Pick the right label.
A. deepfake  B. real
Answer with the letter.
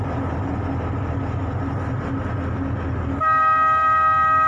B